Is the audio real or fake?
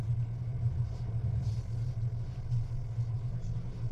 real